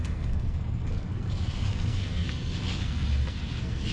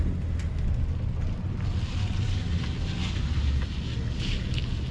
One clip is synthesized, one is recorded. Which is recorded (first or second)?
second